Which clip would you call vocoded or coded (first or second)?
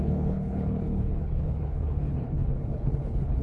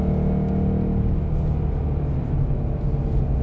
first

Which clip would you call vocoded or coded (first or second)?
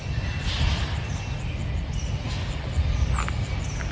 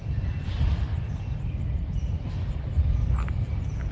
second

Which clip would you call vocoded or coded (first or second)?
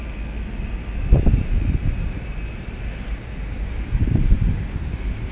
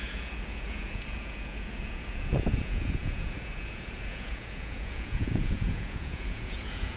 second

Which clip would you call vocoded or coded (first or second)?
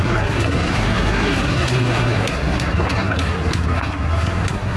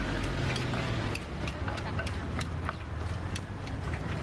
first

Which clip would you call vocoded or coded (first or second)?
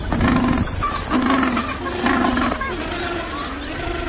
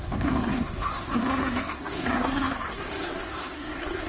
second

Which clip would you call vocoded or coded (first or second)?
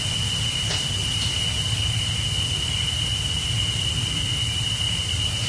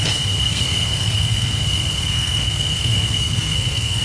second